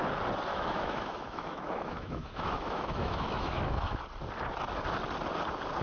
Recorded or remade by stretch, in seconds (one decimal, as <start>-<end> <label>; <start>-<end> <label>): 0.0-0.5 recorded; 0.5-4.0 remade; 4.0-5.8 recorded